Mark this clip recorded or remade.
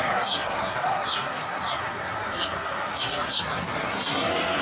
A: remade